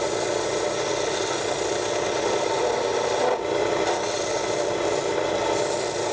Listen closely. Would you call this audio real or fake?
real